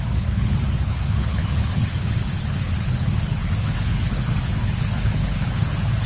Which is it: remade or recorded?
remade